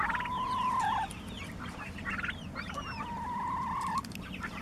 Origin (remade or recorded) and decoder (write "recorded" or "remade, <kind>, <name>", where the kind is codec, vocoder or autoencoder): recorded